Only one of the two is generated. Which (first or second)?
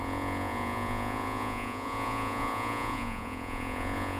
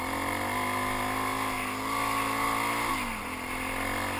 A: first